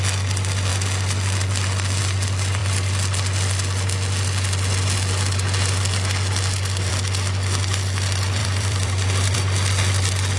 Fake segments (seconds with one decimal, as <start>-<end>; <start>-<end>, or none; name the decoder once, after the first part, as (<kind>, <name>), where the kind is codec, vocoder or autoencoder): 8.4-9.4 (vocoder, BigVGAN v2)